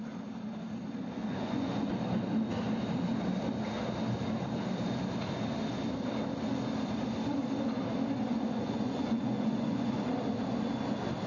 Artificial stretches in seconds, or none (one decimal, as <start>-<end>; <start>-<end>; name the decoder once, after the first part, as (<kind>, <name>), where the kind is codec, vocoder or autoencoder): 1.2-1.9 (vocoder, Vocos); 8.3-10.1